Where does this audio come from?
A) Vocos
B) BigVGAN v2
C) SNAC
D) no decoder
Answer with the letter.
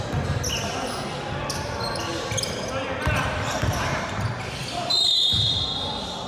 D